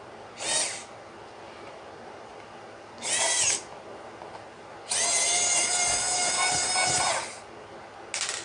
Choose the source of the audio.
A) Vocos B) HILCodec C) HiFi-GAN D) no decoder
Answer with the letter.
D